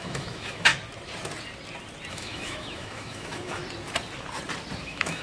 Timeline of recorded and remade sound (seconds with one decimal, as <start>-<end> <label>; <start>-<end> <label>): 0.0-0.7 remade; 0.7-2.1 recorded; 2.1-3.6 remade; 3.6-4.8 recorded; 4.8-5.2 remade